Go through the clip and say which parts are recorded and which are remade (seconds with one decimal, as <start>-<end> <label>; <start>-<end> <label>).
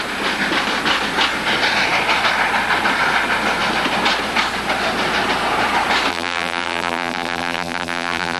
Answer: 0.0-6.1 recorded; 6.1-8.4 remade